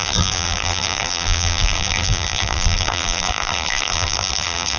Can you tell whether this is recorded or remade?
remade